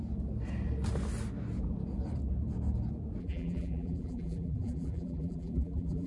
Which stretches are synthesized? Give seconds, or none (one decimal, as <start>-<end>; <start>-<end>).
3.2-6.1